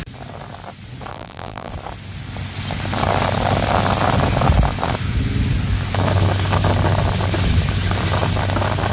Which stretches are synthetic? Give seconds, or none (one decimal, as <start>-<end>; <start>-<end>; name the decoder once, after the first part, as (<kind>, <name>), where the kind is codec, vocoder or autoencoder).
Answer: 1.1-1.7 (vocoder, BigVGAN v2)